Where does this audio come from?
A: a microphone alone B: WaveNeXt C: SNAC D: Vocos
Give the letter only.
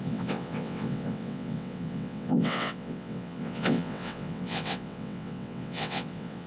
B